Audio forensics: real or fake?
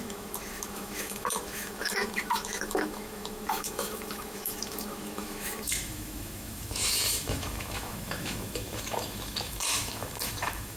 fake